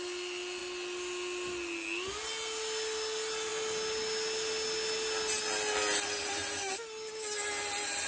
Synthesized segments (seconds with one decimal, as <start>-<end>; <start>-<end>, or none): none